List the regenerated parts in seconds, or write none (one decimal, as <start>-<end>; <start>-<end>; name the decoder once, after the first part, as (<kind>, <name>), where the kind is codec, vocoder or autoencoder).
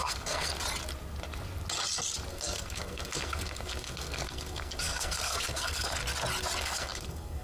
0.0-0.5 (codec, SNAC); 2.3-6.0; 6.6-7.4